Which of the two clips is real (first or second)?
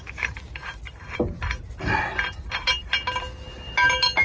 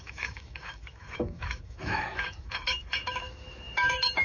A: first